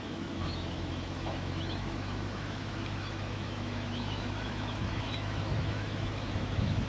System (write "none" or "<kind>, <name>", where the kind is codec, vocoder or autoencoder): autoencoder, DAC-VAE